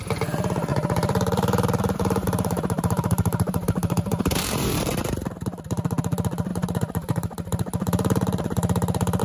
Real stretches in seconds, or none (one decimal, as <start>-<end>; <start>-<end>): 0.0-0.7; 4.9-6.5